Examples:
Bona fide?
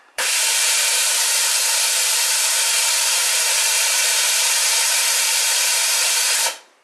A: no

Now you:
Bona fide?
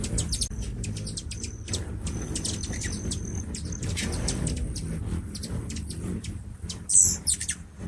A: yes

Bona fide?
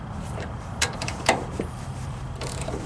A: no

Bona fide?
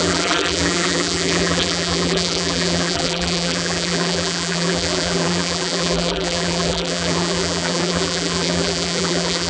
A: no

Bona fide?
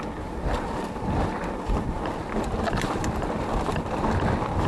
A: yes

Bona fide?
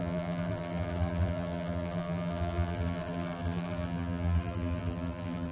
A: no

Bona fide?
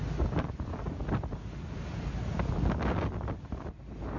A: yes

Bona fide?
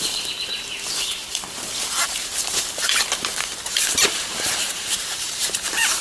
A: no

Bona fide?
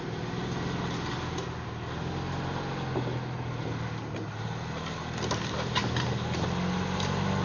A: yes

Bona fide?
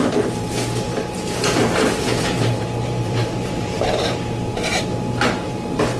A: no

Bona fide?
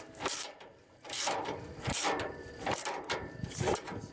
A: no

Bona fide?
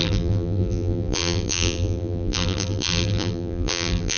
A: no